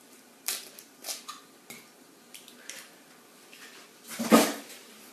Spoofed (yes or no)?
yes